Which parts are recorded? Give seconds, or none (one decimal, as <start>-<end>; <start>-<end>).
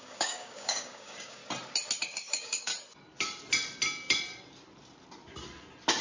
1.4-2.0; 2.7-6.0